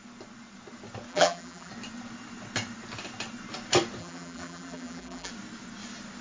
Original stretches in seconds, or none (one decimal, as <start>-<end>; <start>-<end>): 0.0-1.1; 1.7-4.0; 5.3-6.2